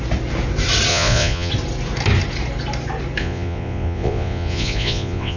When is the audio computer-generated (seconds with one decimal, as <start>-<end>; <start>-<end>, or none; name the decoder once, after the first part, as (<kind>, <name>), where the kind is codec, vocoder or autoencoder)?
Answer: 0.9-1.5 (vocoder, Vocos); 3.2-5.4